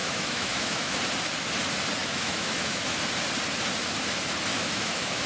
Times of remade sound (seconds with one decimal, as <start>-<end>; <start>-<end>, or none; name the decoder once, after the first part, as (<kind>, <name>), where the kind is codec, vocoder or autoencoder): 0.0-1.0 (autoencoder, DAC-VAE); 2.0-3.0; 4.5-5.3